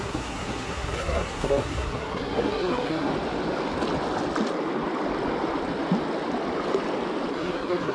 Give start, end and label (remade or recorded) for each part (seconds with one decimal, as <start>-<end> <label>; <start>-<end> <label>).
0.0-3.1 remade; 3.1-7.3 recorded; 7.3-7.9 remade